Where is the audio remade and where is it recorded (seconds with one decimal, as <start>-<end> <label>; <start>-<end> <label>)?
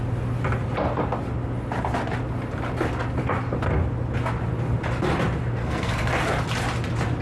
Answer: 0.0-5.6 recorded; 5.6-6.1 remade; 6.1-7.2 recorded